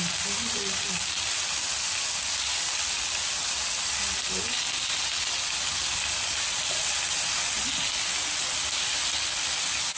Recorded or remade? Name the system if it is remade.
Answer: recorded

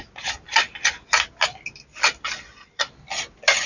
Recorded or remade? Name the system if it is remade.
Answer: recorded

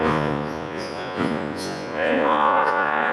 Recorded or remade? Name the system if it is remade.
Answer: remade, vocoder, Vocos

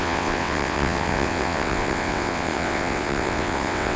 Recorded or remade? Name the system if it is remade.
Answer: remade, vocoder, WaveNeXt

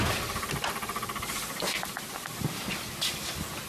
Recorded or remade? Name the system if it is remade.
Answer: recorded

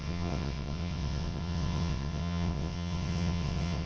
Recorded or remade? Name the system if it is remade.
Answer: remade, vocoder, WaveNeXt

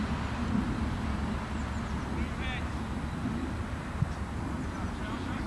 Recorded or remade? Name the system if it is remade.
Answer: recorded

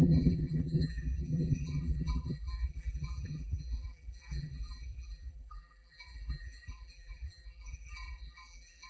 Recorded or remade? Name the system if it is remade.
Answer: remade, vocoder, BigVGAN v2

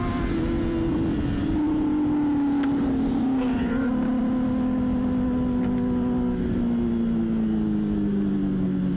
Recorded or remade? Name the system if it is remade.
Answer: recorded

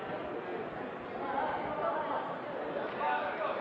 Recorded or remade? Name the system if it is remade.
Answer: recorded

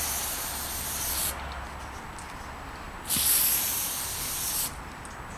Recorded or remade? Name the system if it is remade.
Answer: recorded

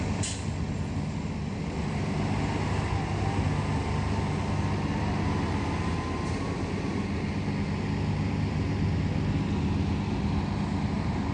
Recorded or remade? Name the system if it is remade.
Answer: recorded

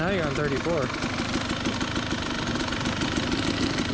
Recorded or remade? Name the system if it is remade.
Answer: recorded